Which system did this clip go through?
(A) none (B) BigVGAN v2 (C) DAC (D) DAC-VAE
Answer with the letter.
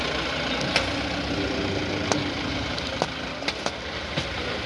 A